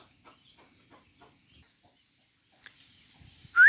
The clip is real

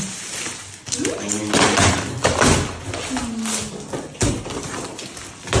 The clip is real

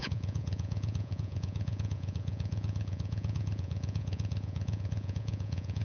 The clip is fake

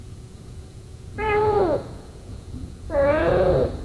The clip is fake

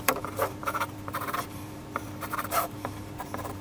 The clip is fake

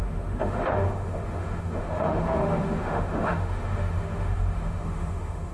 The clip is fake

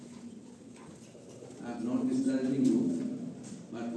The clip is real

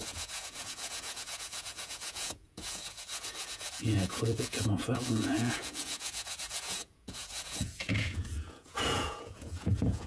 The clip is fake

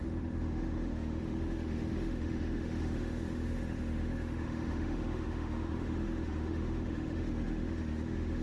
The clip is fake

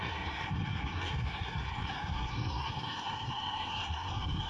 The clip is fake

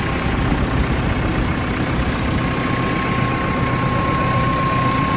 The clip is real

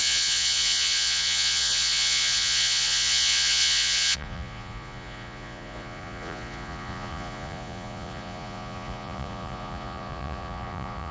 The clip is fake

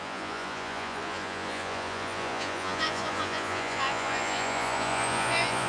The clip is fake